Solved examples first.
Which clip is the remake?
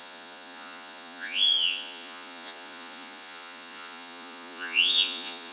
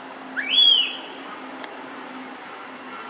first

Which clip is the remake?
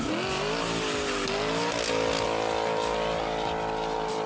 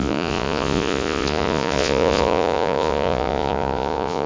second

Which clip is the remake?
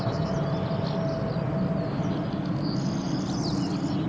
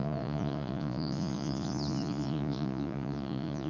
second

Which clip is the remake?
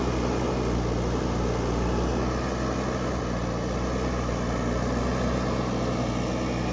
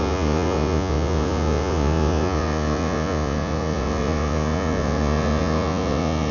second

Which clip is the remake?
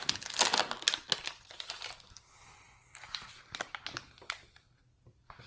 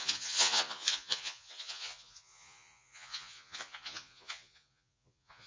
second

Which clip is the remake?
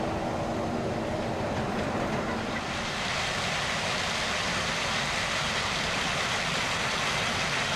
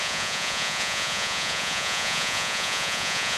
second